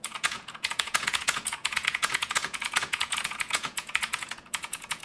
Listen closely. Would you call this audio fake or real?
fake